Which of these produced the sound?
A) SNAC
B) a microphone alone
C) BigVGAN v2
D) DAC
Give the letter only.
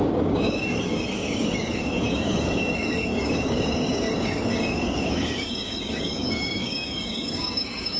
D